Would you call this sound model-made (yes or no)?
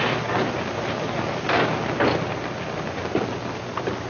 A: no